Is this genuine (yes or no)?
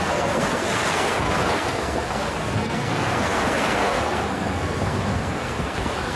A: no